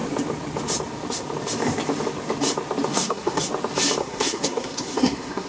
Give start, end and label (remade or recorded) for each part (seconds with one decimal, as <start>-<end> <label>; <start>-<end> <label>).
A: 0.0-2.9 recorded; 2.9-3.5 remade; 3.5-4.0 recorded; 4.0-5.5 remade